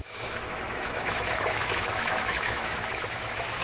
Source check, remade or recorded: remade